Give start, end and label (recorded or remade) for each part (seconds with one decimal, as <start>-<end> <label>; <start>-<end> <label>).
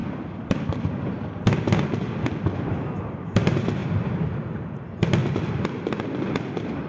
0.0-1.3 remade; 1.3-5.2 recorded; 5.2-6.9 remade